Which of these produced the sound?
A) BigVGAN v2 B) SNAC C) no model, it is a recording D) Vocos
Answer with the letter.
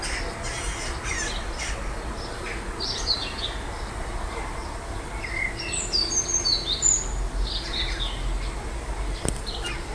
C